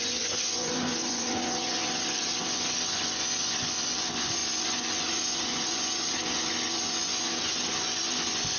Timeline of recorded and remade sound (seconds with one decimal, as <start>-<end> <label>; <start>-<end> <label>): 0.0-8.6 remade